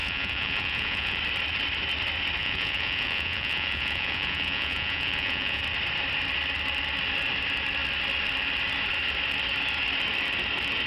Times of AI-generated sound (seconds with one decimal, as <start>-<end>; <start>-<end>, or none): 0.0-1.2; 2.4-5.6